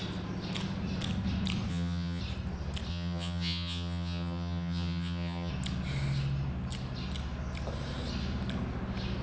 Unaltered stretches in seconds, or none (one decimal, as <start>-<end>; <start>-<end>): 0.0-1.7; 2.2-2.9; 5.5-9.2